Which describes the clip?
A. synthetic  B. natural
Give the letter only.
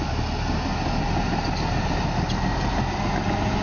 B